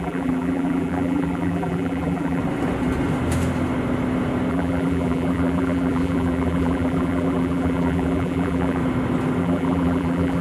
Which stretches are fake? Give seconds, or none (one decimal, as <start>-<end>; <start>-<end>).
0.0-2.4; 4.5-8.8; 9.4-10.4